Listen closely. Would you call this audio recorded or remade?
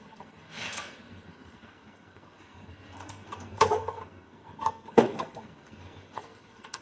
remade